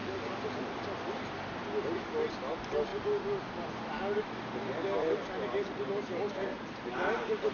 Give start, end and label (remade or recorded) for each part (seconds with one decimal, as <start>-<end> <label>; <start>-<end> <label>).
0.0-2.9 remade; 2.9-4.2 recorded; 4.2-7.5 remade